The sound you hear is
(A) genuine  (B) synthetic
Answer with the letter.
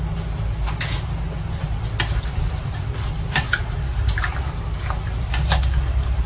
A